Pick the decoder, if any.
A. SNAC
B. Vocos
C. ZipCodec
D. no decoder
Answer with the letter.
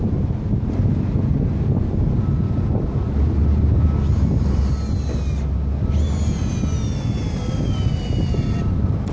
D